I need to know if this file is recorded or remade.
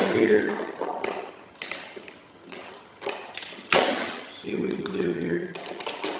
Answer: remade